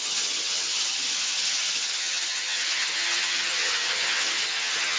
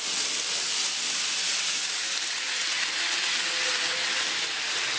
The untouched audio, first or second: second